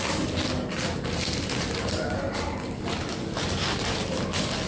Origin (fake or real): fake